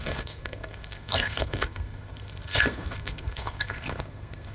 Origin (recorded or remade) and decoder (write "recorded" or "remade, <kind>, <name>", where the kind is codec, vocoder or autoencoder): remade, codec, SNAC